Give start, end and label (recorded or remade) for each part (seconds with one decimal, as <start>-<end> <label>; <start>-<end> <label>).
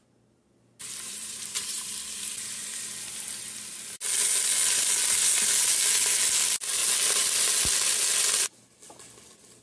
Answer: 0.0-1.1 recorded; 1.1-1.9 remade; 1.9-9.6 recorded